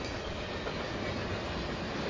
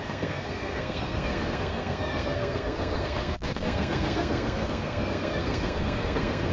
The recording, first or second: first